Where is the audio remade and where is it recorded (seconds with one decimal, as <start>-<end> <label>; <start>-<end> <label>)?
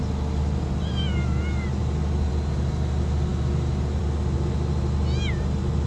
0.0-5.9 recorded